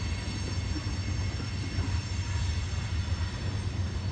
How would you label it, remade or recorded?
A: recorded